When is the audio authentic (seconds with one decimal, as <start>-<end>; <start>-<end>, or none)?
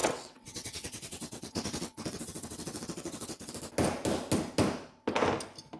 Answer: 3.5-5.8